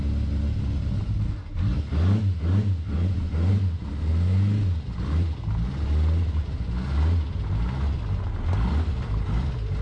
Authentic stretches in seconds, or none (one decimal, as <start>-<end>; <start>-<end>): 0.0-3.5; 4.1-9.8